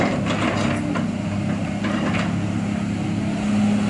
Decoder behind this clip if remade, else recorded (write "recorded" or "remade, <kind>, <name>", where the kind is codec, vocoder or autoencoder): recorded